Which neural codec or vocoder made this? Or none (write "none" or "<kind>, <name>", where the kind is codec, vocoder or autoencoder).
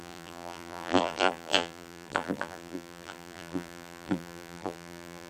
vocoder, BigVGAN v2